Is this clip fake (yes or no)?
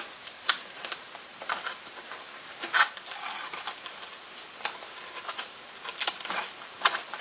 no